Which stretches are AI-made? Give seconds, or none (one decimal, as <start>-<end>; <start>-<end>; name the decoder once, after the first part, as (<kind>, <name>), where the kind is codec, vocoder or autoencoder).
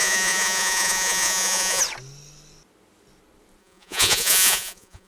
0.0-1.8 (vocoder, Vocos); 3.6-5.1